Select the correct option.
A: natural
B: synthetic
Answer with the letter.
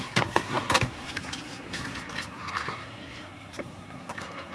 B